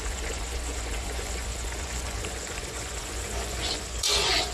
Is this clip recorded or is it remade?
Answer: remade